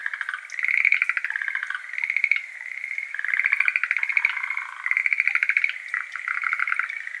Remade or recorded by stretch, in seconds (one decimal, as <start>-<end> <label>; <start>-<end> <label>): 0.0-7.2 recorded